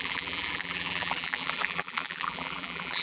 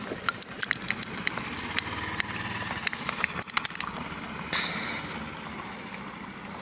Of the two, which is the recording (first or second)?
second